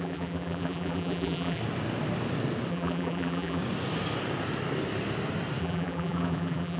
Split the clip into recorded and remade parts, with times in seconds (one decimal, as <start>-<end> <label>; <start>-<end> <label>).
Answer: 0.0-1.6 remade; 1.6-2.7 recorded; 2.7-3.6 remade; 3.6-5.6 recorded; 5.6-6.8 remade